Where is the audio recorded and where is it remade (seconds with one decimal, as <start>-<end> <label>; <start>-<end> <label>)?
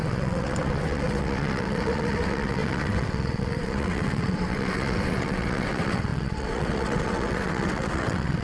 0.0-8.4 remade